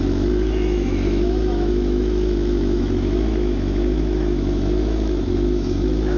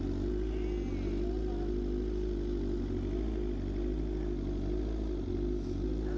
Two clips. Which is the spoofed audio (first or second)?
first